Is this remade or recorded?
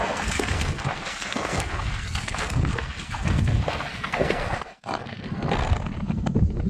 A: remade